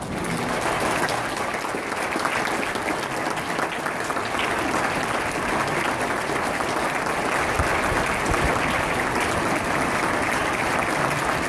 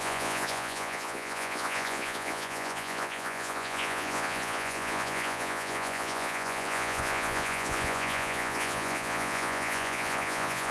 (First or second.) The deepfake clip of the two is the second